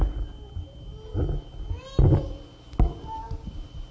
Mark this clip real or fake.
real